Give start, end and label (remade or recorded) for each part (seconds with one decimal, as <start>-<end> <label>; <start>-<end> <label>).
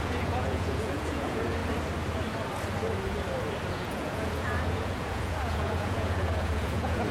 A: 0.0-1.6 remade; 1.6-3.7 recorded; 3.7-7.1 remade